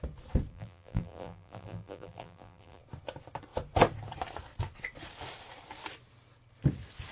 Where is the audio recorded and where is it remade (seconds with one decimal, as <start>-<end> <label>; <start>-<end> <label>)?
0.0-0.5 recorded; 0.5-2.8 remade; 2.8-7.1 recorded